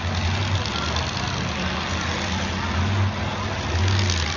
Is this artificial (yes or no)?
no